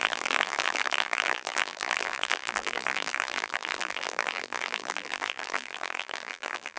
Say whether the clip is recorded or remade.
remade